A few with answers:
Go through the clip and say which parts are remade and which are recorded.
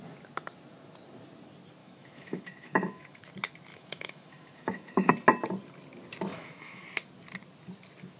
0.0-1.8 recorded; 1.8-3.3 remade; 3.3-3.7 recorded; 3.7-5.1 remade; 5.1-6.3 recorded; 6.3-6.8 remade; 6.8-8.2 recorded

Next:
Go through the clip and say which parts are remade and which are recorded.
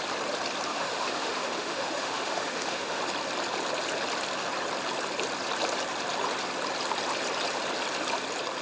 0.0-0.7 recorded; 0.7-3.0 remade; 3.0-8.6 recorded